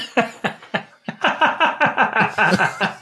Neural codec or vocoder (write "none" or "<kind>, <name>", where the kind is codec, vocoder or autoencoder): none